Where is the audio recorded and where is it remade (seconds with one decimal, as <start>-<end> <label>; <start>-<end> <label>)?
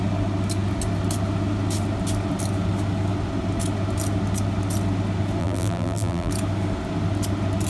0.0-5.4 recorded; 5.4-6.3 remade; 6.3-7.7 recorded